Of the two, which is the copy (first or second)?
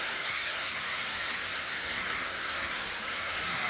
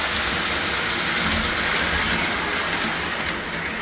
first